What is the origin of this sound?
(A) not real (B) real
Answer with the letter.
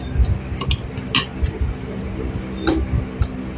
B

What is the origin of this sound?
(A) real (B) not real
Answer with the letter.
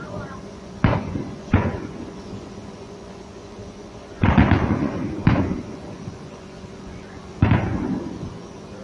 B